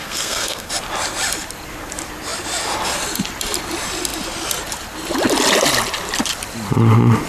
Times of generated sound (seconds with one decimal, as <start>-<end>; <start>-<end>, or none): 0.0-0.7